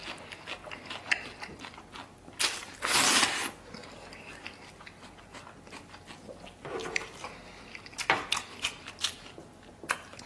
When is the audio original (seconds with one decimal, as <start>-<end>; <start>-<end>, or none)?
0.0-10.3